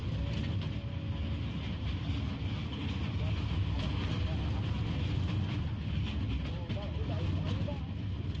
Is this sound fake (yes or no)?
no